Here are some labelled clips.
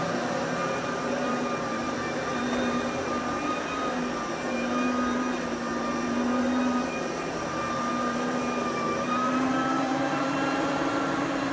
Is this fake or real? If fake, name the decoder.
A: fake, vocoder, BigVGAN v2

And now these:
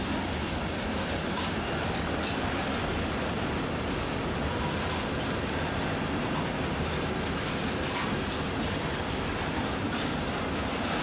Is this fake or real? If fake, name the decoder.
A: real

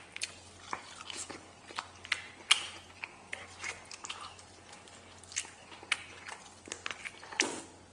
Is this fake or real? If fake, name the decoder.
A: real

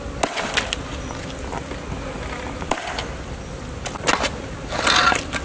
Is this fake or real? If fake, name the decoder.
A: real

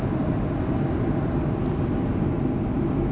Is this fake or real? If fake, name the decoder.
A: real